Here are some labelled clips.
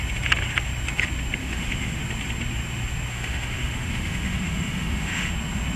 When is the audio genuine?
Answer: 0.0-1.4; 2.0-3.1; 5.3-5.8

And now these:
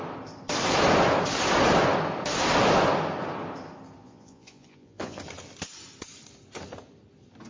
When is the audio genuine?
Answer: 0.0-4.0; 5.2-7.5

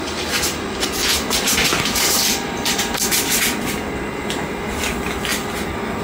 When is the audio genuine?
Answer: 0.0-1.7; 4.5-5.3

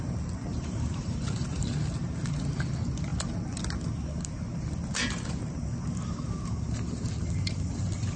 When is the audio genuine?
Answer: 0.0-0.5; 1.6-8.2

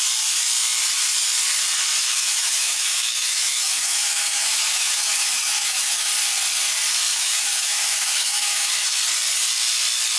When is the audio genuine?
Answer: 0.0-2.0; 6.1-7.1; 9.0-10.2